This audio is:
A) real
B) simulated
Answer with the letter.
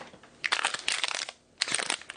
A